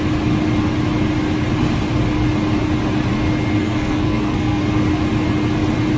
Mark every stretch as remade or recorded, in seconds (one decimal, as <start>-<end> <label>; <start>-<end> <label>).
0.0-3.6 recorded; 3.6-4.6 remade; 4.6-6.0 recorded